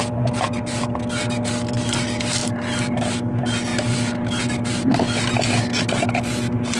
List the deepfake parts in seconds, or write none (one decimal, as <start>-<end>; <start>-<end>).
none